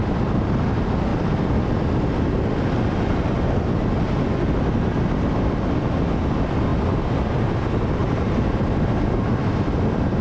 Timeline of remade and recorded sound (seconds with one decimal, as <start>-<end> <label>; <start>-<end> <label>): 0.0-8.0 recorded; 8.0-8.7 remade; 8.7-10.2 recorded